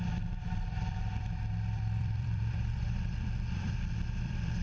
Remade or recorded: remade